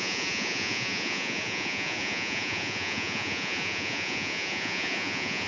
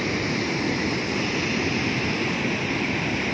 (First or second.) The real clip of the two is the second